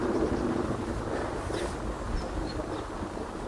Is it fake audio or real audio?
real